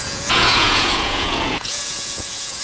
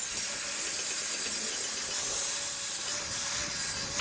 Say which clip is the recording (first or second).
second